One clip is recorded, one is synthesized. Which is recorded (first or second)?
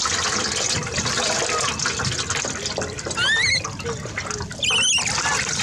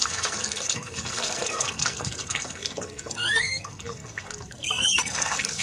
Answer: first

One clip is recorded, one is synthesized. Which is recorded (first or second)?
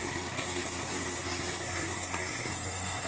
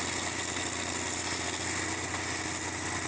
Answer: second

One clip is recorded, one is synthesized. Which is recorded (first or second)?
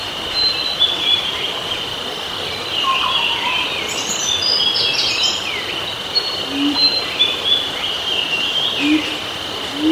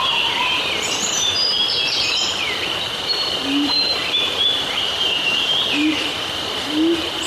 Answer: first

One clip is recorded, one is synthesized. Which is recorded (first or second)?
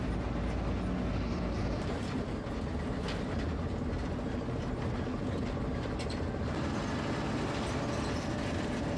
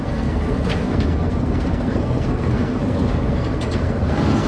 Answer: first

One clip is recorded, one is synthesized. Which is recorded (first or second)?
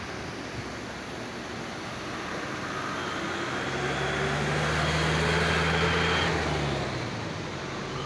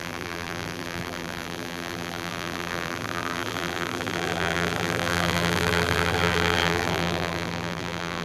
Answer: first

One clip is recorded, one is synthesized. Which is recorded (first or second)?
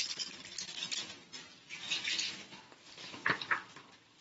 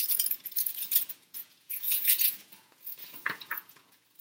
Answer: first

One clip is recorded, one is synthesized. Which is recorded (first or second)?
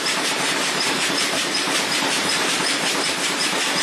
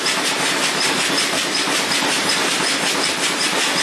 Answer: second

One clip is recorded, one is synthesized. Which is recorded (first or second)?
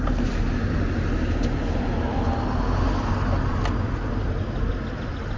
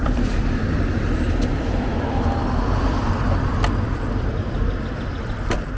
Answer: first